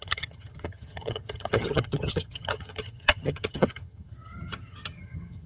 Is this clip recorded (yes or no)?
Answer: no